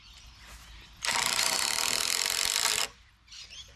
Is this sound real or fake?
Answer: real